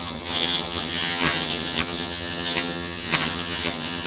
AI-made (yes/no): yes